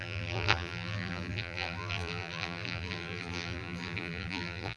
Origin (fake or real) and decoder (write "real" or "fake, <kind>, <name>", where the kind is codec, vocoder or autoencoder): fake, vocoder, BigVGAN v2